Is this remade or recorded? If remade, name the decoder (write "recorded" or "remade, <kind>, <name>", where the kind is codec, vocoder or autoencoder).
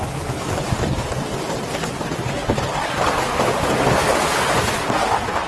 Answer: recorded